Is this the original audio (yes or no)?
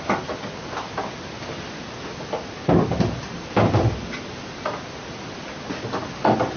yes